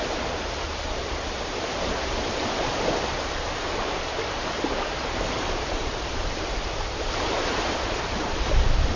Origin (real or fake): fake